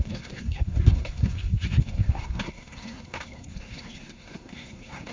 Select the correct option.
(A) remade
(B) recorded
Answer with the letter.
A